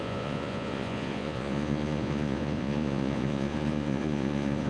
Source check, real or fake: fake